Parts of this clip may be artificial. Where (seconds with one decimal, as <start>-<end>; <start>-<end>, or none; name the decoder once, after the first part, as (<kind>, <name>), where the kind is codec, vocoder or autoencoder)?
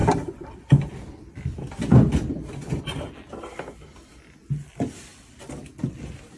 0.0-2.8 (vocoder, BigVGAN v2); 5.1-5.9